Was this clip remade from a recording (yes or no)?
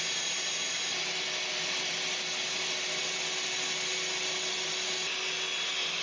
no